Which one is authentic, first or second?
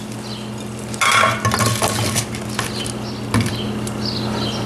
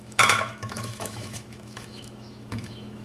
first